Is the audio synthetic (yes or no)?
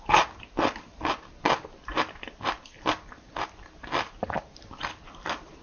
no